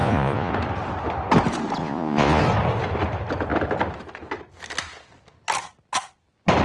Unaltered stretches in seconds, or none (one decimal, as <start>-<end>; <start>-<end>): 0.5-1.8; 2.4-6.6